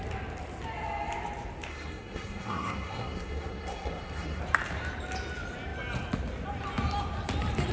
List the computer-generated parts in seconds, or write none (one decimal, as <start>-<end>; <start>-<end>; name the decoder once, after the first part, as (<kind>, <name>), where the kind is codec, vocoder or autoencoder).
1.7-4.4 (codec, SNAC)